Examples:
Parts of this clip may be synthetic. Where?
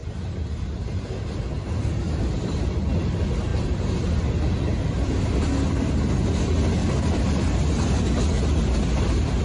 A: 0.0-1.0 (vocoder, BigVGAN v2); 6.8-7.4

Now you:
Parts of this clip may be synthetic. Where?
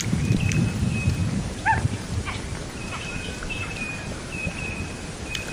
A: none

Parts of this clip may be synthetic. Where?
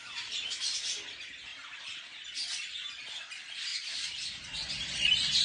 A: 1.5-2.0 (vocoder, BigVGAN v2); 3.7-4.9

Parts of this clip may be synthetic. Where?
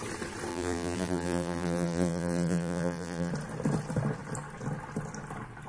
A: 0.5-3.3 (vocoder, BigVGAN v2)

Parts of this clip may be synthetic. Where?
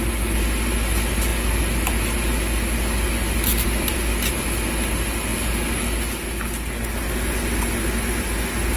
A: 3.5-4.1 (vocoder, BigVGAN v2)